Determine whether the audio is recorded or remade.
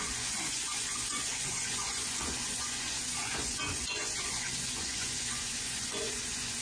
remade